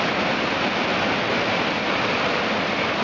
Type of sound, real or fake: real